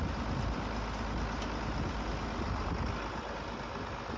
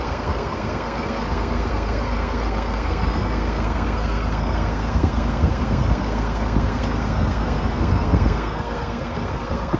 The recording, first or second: first